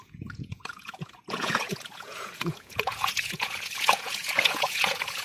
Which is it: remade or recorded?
remade